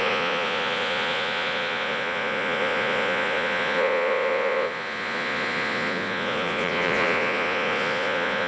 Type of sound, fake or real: fake